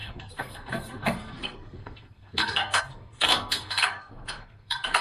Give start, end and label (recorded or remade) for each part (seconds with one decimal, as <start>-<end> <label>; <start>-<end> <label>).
0.0-5.0 remade